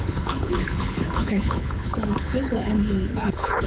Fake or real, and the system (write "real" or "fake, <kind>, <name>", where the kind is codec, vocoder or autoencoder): fake, codec, HILCodec